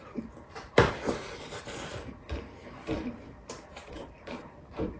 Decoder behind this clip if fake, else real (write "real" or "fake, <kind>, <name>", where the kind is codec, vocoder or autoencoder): fake, vocoder, BigVGAN v2